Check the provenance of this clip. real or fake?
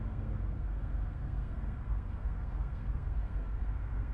fake